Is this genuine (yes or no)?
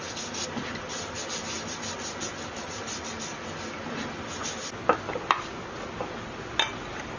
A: yes